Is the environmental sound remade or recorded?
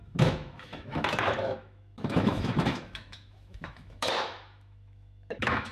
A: remade